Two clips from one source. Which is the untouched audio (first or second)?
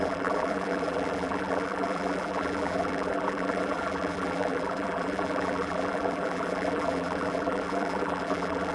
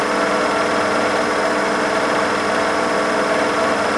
second